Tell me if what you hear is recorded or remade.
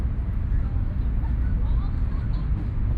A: recorded